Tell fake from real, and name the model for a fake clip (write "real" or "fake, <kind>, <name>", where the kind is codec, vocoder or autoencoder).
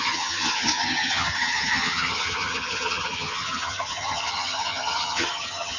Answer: fake, vocoder, HiFi-GAN